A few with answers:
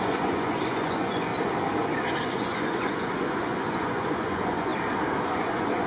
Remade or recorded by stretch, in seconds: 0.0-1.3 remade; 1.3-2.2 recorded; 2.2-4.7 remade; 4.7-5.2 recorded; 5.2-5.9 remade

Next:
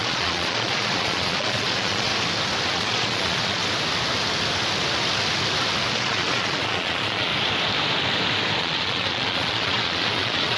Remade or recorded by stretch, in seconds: 0.0-2.1 remade; 2.1-2.7 recorded; 2.7-3.6 remade; 3.6-5.9 recorded; 5.9-7.3 remade; 7.3-8.6 recorded; 8.6-10.6 remade

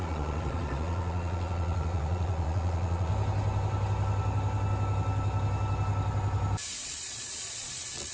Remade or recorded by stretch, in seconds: 0.0-3.1 remade; 3.1-6.8 recorded; 6.8-8.1 remade